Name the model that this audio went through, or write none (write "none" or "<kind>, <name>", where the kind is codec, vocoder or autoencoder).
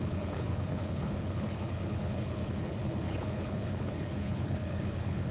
codec, HILCodec